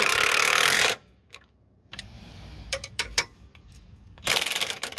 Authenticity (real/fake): fake